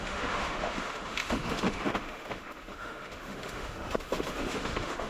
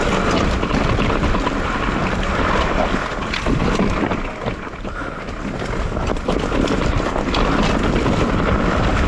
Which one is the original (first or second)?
second